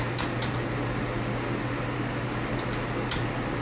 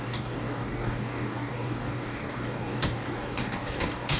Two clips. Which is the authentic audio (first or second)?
first